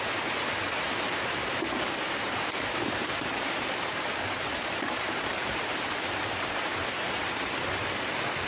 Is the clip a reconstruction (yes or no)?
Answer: yes